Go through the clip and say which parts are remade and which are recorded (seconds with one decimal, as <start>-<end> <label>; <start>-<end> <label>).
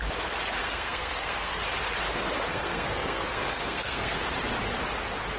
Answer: 0.0-0.6 recorded; 0.6-1.6 remade; 1.6-2.5 recorded; 2.5-4.2 remade; 4.2-5.4 recorded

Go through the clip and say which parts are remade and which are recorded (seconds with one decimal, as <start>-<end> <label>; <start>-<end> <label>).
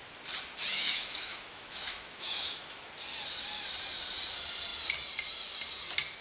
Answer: 0.0-0.7 recorded; 0.7-2.9 remade; 2.9-6.2 recorded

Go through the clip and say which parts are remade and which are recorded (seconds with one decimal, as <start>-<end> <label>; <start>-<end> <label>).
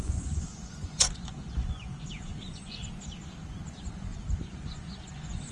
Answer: 0.0-2.8 remade; 2.8-3.7 recorded; 3.7-5.5 remade